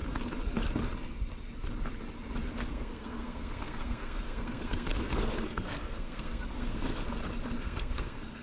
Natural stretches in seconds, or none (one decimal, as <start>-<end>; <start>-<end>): 0.0-2.7; 7.1-7.6